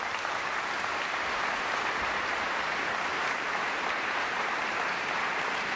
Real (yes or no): no